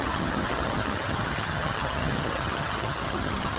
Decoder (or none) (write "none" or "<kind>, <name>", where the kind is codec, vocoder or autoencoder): vocoder, HiFi-GAN